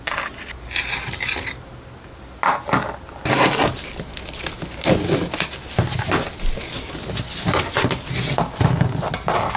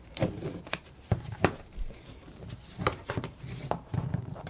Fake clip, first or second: second